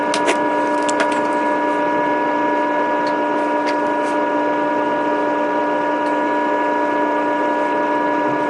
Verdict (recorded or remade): recorded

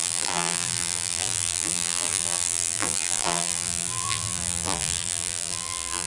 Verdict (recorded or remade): remade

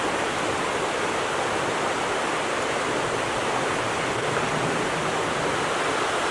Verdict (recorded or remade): recorded